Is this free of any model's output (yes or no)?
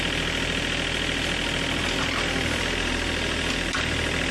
yes